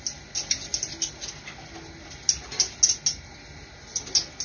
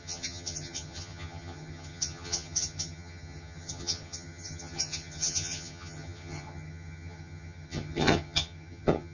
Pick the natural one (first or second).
first